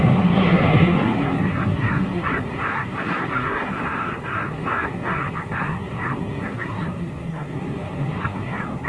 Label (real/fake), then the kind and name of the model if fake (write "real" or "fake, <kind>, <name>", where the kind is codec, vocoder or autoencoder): fake, codec, SNAC